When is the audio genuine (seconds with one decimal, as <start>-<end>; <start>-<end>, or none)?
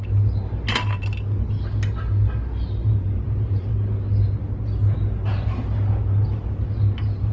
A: 0.0-2.8; 3.7-7.3